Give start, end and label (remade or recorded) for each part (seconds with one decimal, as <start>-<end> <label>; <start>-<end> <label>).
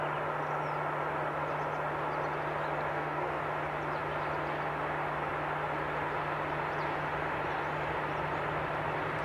0.0-2.9 recorded; 2.9-3.4 remade; 3.4-9.2 recorded